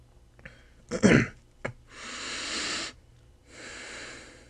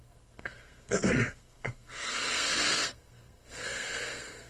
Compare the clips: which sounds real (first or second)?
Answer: first